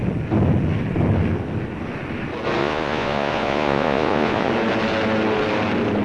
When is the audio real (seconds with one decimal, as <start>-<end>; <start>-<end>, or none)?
0.0-2.6; 4.5-6.0